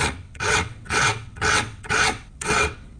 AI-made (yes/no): yes